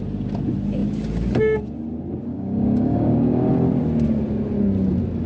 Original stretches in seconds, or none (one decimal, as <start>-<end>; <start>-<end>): 0.0-2.3; 3.5-5.3